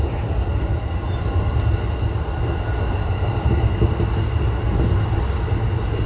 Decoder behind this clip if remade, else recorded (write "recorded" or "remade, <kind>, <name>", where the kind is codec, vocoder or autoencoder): recorded